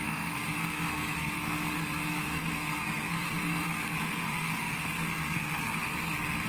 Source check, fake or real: fake